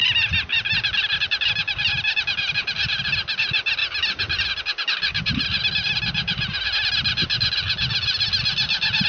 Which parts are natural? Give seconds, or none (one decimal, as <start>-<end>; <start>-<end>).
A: 0.0-9.1